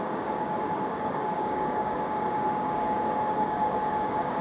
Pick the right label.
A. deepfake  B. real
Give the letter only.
A